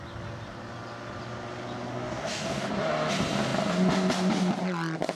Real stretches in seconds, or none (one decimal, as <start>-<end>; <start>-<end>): 0.0-1.9; 2.7-5.2